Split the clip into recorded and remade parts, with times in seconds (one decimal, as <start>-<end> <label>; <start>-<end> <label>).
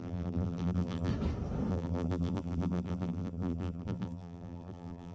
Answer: 0.0-1.1 remade; 1.1-1.7 recorded; 1.7-5.1 remade